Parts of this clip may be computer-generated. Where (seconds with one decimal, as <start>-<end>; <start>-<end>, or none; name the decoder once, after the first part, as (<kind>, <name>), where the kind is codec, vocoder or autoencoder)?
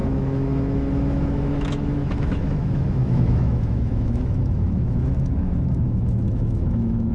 0.0-7.1 (autoencoder, DAC-VAE)